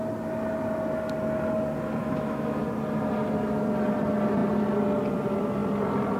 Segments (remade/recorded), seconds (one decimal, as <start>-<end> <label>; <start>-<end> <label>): 0.0-2.0 recorded; 2.0-2.6 remade; 2.6-6.2 recorded